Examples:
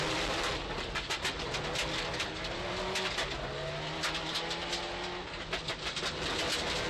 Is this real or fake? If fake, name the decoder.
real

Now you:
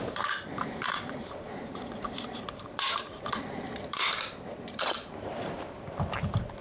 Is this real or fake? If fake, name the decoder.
fake, vocoder, BigVGAN v2